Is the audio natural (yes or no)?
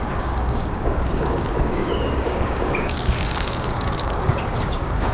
no